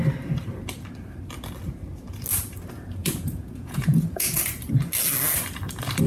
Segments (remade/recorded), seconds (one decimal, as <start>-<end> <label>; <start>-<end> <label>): 0.0-3.0 recorded; 3.0-4.4 remade; 4.4-6.1 recorded